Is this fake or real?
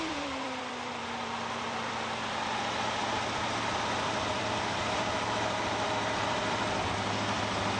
fake